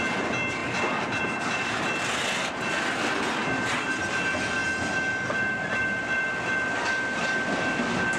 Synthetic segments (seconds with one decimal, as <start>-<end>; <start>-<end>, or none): 0.6-1.8